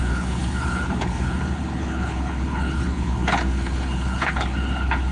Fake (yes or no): yes